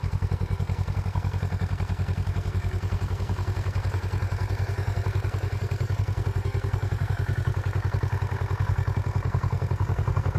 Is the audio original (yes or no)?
no